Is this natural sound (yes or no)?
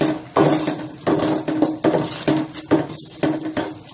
yes